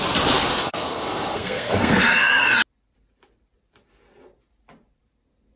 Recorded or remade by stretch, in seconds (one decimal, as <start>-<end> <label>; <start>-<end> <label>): 0.0-0.5 recorded; 0.5-2.3 remade; 2.3-5.6 recorded